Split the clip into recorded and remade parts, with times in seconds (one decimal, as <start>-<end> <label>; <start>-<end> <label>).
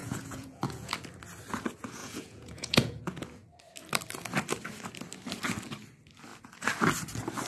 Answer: 0.0-0.9 remade; 0.9-2.0 recorded; 2.0-3.0 remade; 3.0-7.5 recorded